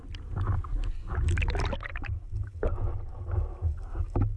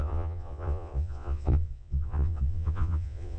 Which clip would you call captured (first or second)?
first